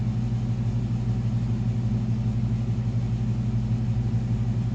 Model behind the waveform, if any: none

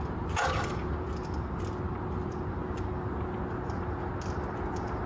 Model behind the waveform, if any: none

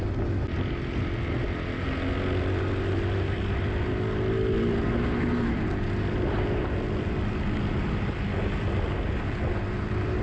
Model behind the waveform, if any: none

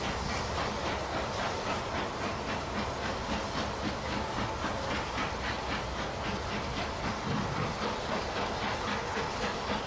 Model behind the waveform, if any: none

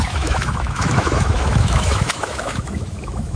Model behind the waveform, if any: autoencoder, DAC-VAE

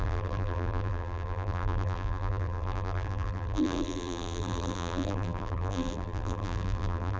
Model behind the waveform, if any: vocoder, BigVGAN v2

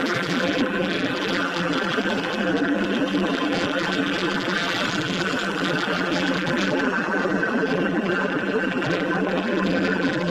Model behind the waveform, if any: vocoder, BigVGAN v2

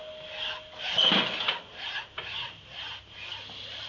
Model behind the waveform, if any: none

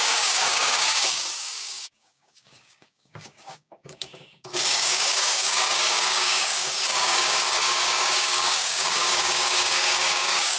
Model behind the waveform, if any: codec, DAC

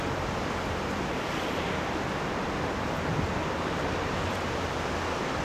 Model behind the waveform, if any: none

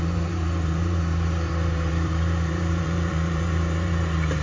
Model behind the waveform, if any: vocoder, BigVGAN v2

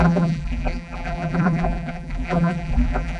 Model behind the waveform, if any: vocoder, BigVGAN v2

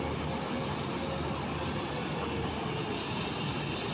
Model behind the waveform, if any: none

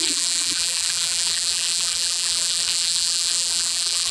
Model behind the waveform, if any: vocoder, BigVGAN v2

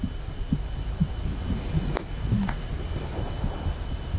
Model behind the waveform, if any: none